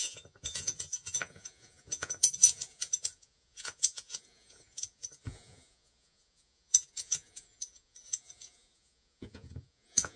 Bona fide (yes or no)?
no